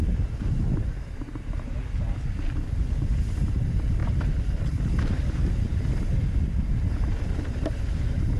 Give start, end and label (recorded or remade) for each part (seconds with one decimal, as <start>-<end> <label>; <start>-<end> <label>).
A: 0.0-4.0 recorded; 4.0-4.9 remade; 4.9-8.4 recorded

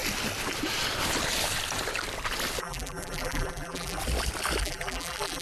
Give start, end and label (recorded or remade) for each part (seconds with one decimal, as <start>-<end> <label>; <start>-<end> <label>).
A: 0.0-2.6 recorded; 2.6-4.0 remade; 4.0-4.6 recorded; 4.6-5.4 remade